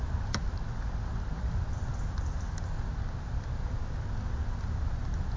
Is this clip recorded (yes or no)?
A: yes